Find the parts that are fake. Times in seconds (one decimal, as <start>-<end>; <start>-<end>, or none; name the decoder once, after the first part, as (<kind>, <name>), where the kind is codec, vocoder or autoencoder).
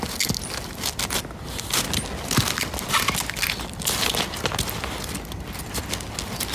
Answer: none